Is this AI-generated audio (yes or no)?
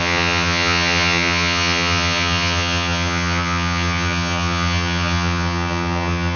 yes